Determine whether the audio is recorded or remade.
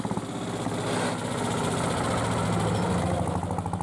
recorded